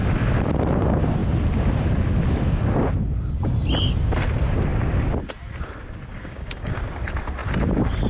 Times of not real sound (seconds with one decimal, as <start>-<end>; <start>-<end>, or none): 6.1-6.8